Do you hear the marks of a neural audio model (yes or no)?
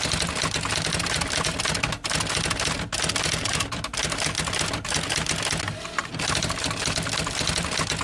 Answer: no